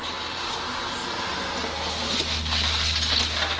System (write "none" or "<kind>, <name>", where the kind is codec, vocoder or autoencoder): none